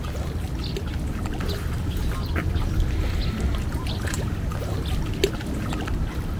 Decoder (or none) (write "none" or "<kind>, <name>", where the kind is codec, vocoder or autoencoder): none